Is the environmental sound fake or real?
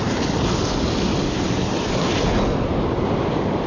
real